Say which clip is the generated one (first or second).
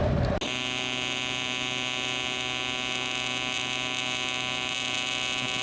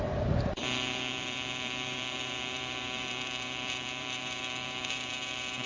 second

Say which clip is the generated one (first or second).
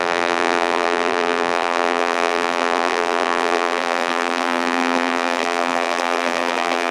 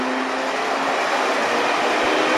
first